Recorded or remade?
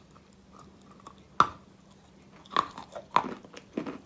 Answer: recorded